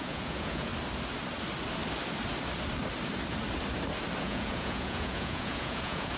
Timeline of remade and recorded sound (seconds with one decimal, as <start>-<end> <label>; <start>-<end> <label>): 0.0-0.7 remade; 0.7-4.2 recorded; 4.2-6.2 remade